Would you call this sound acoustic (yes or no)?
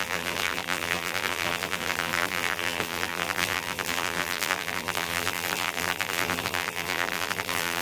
no